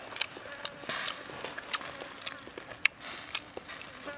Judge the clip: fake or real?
real